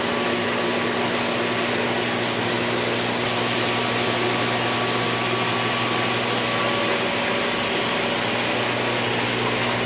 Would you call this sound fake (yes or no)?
no